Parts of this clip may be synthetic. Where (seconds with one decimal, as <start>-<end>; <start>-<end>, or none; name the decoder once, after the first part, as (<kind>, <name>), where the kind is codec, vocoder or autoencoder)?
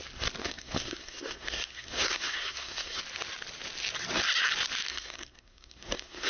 0.4-3.0 (codec, SNAC); 4.9-6.3